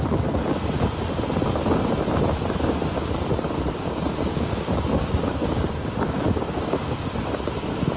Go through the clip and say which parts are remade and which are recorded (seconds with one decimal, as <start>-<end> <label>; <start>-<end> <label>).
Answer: 0.0-3.8 recorded; 3.8-7.1 remade; 7.1-8.0 recorded